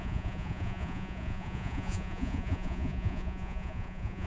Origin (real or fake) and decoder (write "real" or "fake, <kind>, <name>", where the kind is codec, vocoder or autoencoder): fake, vocoder, Vocos